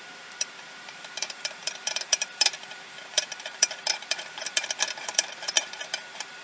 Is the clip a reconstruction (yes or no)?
yes